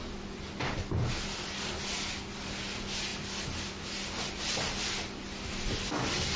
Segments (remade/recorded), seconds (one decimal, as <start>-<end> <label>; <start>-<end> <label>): 0.0-6.4 recorded